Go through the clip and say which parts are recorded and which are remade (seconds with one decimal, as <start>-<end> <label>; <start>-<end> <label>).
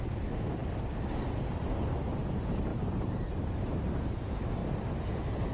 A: 0.0-2.7 recorded; 2.7-3.8 remade; 3.8-4.6 recorded; 4.6-5.5 remade